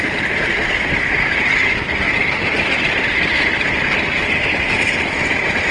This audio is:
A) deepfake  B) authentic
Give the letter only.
B